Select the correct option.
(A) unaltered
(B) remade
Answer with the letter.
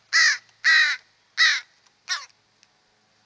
A